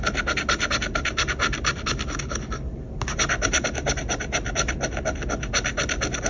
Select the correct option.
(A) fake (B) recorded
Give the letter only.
B